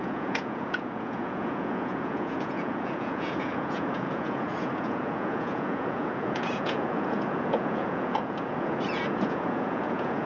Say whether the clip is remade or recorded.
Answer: remade